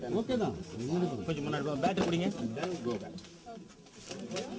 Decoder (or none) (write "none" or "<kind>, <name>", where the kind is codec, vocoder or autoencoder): none